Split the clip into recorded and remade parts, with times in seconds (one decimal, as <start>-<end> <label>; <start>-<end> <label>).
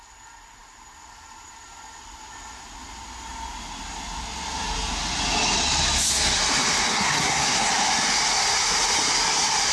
0.0-6.9 recorded; 6.9-7.7 remade; 7.7-9.7 recorded